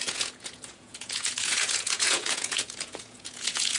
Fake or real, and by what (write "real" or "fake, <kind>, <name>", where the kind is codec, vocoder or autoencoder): fake, vocoder, Vocos